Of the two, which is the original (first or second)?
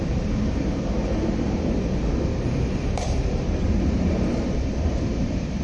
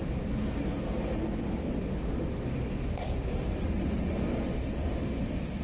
second